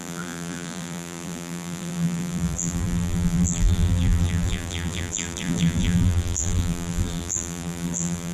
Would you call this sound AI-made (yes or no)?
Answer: yes